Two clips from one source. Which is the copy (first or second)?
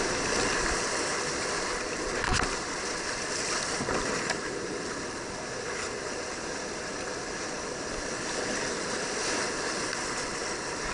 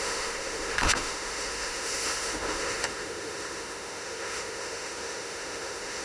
second